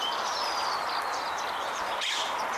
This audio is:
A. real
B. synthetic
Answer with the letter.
B